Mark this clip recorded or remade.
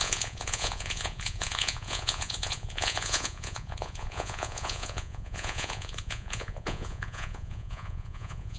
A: remade